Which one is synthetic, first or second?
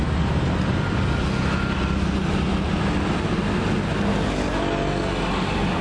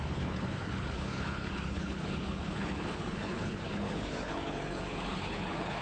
second